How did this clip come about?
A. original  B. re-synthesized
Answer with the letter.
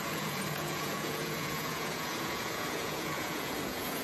B